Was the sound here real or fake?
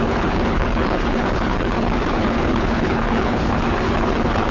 fake